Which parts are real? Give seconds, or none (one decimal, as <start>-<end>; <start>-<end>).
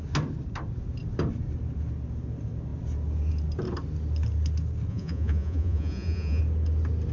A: 0.0-4.9; 6.4-7.1